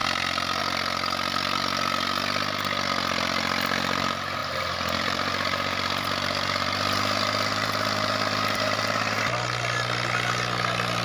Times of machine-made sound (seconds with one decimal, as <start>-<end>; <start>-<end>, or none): 4.4-9.2